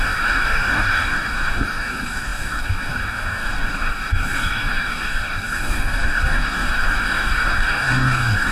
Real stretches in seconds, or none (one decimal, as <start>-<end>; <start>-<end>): none